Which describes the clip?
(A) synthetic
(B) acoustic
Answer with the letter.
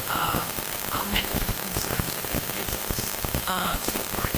A